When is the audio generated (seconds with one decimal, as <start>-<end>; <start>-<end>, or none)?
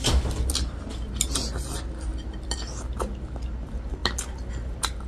none